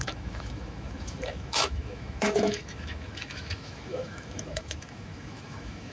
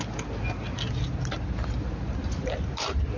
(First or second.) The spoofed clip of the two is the first